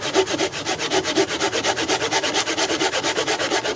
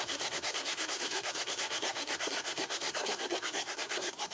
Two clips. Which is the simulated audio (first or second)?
second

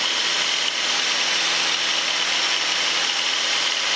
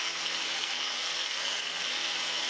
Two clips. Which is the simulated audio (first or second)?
second